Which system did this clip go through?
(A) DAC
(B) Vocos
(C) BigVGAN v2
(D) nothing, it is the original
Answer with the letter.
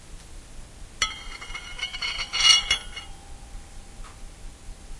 D